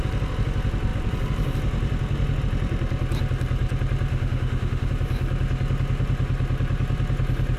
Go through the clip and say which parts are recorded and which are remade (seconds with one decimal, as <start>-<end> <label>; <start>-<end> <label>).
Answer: 0.0-4.1 recorded; 4.1-4.9 remade; 4.9-7.6 recorded